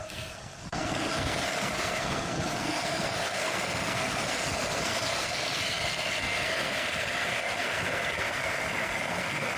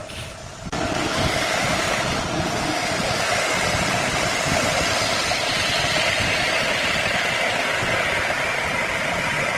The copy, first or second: first